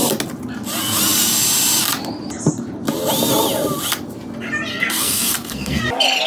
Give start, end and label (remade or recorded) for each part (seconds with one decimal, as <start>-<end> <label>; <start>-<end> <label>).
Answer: 0.0-4.7 recorded; 4.7-5.8 remade; 5.8-6.3 recorded

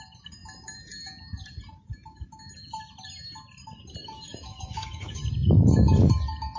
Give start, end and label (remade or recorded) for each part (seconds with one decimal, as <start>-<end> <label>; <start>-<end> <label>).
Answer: 0.0-4.0 recorded; 4.0-5.2 remade; 5.2-6.6 recorded

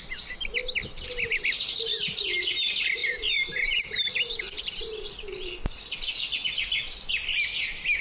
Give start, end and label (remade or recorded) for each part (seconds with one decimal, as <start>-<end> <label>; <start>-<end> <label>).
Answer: 0.0-3.0 recorded; 3.0-4.8 remade; 4.8-8.0 recorded

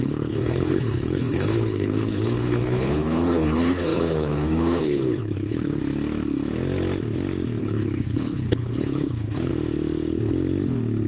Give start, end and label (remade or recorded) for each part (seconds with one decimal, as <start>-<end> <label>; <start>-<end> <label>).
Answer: 0.0-5.8 remade; 5.8-7.6 recorded; 7.6-9.5 remade; 9.5-11.1 recorded

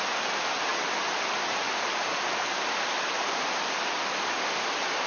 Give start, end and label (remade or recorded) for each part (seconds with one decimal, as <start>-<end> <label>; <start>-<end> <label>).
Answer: 0.0-5.1 recorded